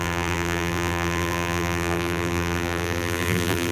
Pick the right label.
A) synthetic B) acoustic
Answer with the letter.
A